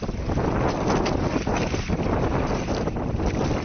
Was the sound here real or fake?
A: real